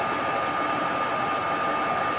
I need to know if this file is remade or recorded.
recorded